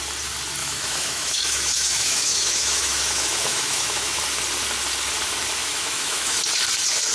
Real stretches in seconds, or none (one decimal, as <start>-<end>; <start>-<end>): 0.0-0.6; 4.2-5.6; 6.4-7.1